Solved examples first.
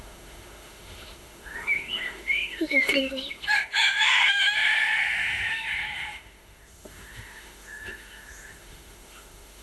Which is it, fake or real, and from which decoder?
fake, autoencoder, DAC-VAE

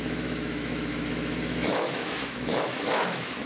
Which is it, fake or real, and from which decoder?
fake, autoencoder, DAC-VAE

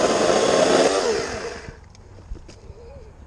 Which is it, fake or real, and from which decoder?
real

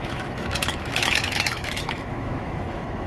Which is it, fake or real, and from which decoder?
fake, autoencoder, DAC-VAE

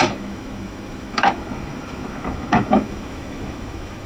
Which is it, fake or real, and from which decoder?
fake, autoencoder, DAC-VAE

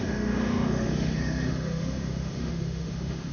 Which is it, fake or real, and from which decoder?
fake, autoencoder, DAC-VAE